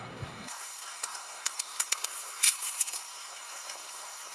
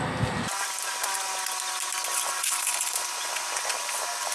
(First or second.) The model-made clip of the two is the first